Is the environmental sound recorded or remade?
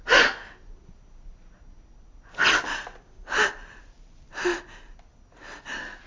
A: recorded